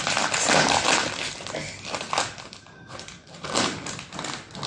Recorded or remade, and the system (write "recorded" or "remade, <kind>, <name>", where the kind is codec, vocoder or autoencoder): recorded